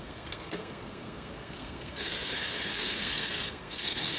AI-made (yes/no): yes